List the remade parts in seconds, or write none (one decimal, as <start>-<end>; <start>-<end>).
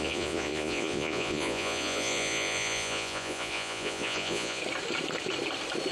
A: 0.0-4.6